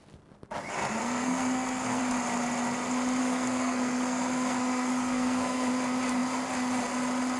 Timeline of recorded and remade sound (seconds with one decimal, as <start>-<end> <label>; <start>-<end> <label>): 0.0-1.0 recorded; 1.0-2.0 remade; 2.0-3.2 recorded; 3.2-5.7 remade; 5.7-7.4 recorded